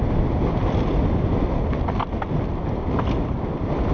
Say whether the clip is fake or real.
real